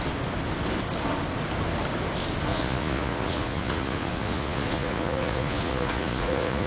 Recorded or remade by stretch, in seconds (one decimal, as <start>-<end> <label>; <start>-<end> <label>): 0.0-2.5 recorded; 2.5-6.7 remade